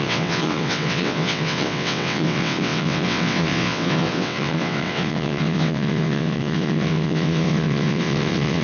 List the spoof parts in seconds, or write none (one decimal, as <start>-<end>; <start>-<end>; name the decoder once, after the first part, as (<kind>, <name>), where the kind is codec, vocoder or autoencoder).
0.0-8.6 (vocoder, WaveNeXt)